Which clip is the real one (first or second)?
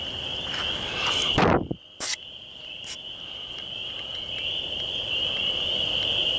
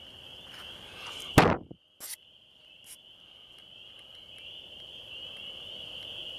second